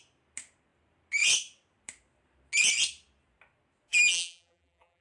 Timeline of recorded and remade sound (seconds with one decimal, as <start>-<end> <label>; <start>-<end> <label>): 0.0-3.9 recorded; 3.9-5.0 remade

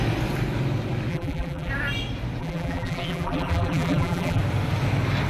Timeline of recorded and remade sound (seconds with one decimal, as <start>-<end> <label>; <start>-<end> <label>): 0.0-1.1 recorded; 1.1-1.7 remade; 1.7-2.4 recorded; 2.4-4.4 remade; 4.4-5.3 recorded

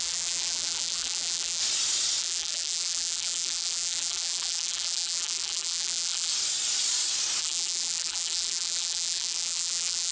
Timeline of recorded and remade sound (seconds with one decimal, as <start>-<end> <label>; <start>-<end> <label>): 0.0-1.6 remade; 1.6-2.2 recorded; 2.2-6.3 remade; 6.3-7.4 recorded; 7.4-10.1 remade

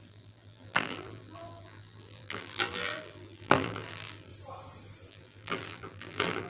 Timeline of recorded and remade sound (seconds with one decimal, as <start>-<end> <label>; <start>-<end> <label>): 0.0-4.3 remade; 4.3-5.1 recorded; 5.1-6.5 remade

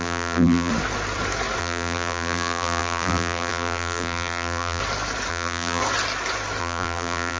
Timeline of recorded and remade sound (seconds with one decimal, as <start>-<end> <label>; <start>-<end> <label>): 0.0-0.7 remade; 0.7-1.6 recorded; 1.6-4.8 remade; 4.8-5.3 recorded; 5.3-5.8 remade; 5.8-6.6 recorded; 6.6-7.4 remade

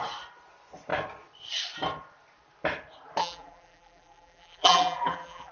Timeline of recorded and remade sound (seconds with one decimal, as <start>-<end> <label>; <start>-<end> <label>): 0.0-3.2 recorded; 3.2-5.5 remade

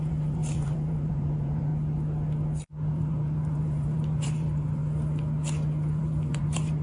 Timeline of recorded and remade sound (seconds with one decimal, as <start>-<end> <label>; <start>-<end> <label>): 0.0-1.7 remade; 1.7-2.9 recorded; 2.9-4.8 remade; 4.8-6.0 recorded; 6.0-6.8 remade